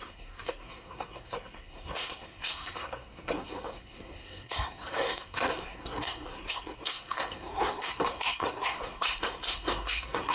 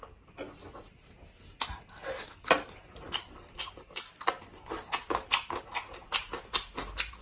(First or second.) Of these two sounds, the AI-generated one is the first